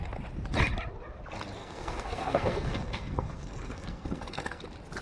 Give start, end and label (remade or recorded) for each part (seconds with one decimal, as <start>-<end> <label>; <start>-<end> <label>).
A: 0.0-1.6 recorded; 1.6-4.6 remade; 4.6-5.0 recorded